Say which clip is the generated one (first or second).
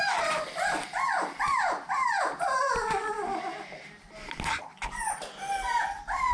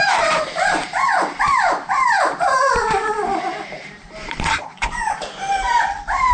second